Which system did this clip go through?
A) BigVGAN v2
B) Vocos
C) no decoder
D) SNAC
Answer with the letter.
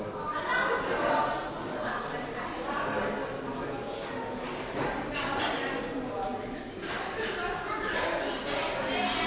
C